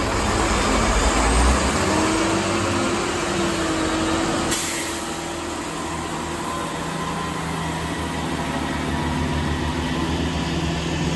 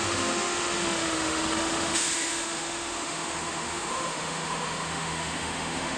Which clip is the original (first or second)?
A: first